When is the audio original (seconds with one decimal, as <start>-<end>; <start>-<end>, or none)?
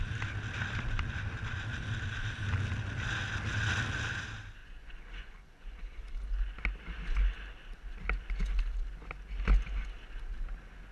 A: 0.0-4.6; 6.0-10.9